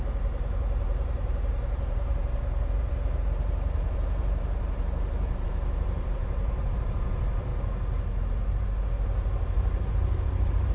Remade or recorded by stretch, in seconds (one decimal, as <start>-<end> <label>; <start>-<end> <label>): 0.0-7.5 remade; 7.5-8.2 recorded; 8.2-10.7 remade